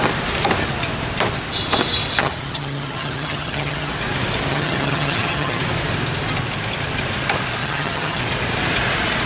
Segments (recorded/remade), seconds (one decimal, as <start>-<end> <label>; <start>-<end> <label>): 0.0-2.2 recorded; 2.2-3.9 remade; 3.9-4.5 recorded; 4.5-5.6 remade; 5.6-7.6 recorded; 7.6-8.2 remade; 8.2-9.3 recorded